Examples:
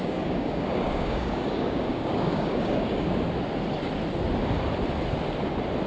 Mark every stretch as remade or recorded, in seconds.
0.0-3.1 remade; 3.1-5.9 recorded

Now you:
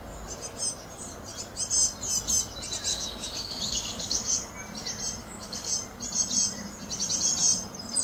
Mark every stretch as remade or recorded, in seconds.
0.0-2.9 recorded; 2.9-4.5 remade; 4.5-5.2 recorded; 5.2-5.7 remade; 5.7-8.0 recorded

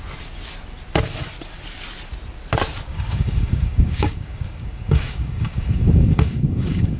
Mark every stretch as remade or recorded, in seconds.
0.0-2.9 recorded; 2.9-7.0 remade

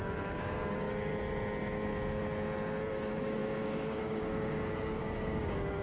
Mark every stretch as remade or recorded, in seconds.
0.0-1.1 remade; 1.1-2.9 recorded; 2.9-5.8 remade

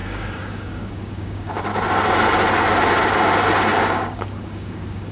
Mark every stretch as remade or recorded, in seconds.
0.0-1.7 remade; 1.7-3.8 recorded; 3.8-5.1 remade

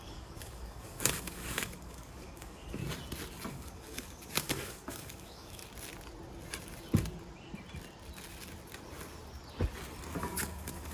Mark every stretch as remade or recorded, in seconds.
0.0-2.8 remade; 2.8-3.5 recorded; 3.5-5.6 remade; 5.6-10.2 recorded; 10.2-10.9 remade

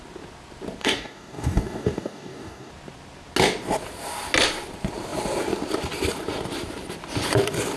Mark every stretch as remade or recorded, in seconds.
0.0-0.8 recorded; 0.8-2.7 remade; 2.7-7.8 recorded

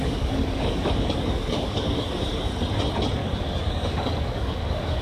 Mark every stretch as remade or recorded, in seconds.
0.0-2.5 remade; 2.5-3.2 recorded; 3.2-5.0 remade